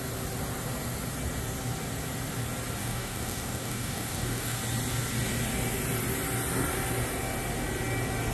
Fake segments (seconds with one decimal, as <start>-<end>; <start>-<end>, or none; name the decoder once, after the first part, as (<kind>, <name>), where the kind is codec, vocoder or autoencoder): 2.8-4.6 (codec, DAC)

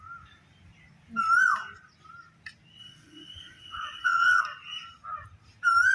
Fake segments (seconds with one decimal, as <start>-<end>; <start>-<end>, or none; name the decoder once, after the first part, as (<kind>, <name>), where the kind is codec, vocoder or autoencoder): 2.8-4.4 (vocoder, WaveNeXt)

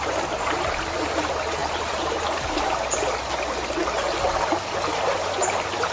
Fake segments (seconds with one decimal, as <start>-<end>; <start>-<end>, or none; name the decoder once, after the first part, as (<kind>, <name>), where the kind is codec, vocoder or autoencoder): 1.6-2.3 (vocoder, BigVGAN v2)

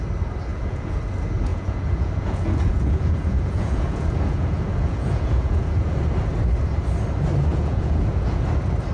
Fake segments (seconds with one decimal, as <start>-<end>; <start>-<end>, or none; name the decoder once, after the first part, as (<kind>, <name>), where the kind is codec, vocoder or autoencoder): 0.5-1.0 (vocoder, Vocos); 1.5-6.0; 7.5-8.4

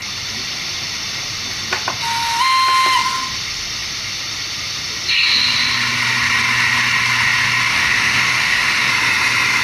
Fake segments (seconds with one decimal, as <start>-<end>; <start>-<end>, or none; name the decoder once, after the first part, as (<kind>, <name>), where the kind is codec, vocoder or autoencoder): 7.7-8.9 (autoencoder, DAC-VAE)